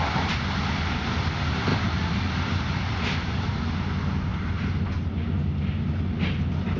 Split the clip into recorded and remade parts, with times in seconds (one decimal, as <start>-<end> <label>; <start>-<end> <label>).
0.0-1.7 recorded; 1.7-3.6 remade; 3.6-6.8 recorded